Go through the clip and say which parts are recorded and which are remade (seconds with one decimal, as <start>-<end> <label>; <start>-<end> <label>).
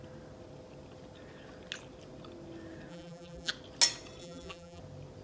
0.0-2.9 recorded; 2.9-3.5 remade; 3.5-4.2 recorded; 4.2-4.8 remade; 4.8-5.2 recorded